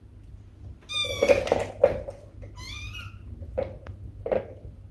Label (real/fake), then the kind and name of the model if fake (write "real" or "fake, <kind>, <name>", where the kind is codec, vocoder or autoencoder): real